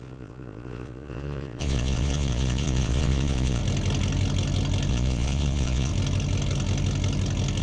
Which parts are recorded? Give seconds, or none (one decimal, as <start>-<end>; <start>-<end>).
3.6-4.9; 5.9-7.6